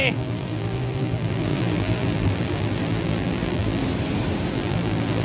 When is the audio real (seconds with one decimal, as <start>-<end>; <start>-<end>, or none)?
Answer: 3.8-4.5